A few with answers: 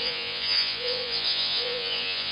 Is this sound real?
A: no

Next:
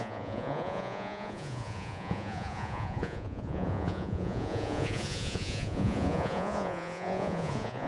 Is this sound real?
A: no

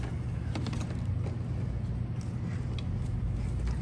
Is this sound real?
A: yes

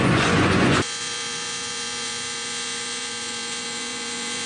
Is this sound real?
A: no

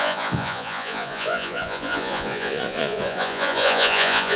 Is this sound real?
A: no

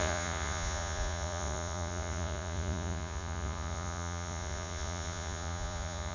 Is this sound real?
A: no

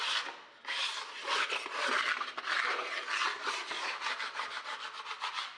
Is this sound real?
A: yes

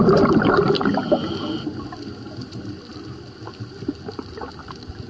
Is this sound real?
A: yes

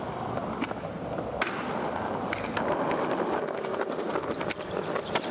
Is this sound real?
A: yes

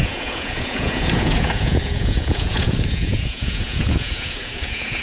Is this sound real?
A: no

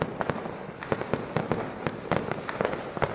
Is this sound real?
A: yes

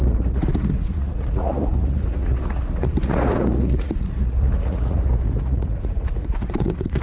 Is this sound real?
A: no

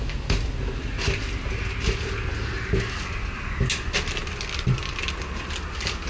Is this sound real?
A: yes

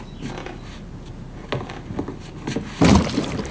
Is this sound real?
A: yes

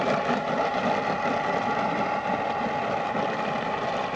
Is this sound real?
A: yes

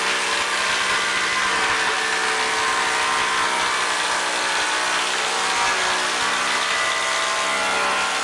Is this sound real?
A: yes